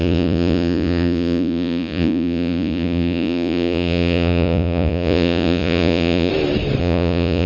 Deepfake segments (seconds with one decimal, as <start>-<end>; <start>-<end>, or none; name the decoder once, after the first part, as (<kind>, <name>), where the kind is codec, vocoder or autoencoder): 0.0-6.3 (vocoder, Vocos); 6.8-7.5